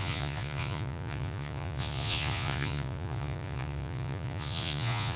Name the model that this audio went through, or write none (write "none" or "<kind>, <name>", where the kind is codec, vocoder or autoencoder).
vocoder, Vocos